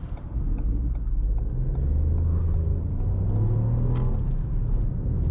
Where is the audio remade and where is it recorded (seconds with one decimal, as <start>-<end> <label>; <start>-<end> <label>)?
0.0-5.3 recorded